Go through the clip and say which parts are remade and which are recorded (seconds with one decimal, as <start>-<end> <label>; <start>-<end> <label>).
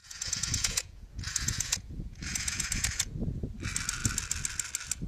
0.0-3.1 remade; 3.1-5.1 recorded